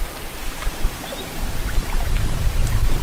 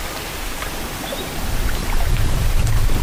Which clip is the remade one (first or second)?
first